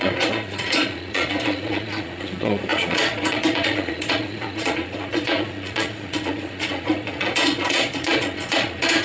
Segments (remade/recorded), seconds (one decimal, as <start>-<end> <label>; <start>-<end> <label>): 0.0-9.0 remade